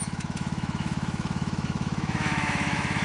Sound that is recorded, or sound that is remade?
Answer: remade